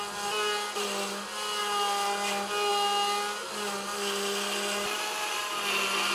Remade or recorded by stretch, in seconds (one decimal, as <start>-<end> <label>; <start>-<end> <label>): 0.0-6.1 recorded